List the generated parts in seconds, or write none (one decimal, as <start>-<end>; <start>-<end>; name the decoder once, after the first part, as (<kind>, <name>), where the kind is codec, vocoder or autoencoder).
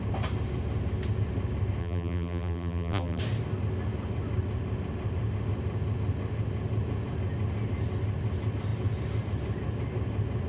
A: 1.8-3.2 (vocoder, BigVGAN v2)